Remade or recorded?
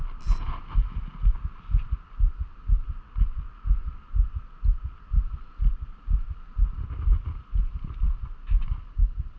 recorded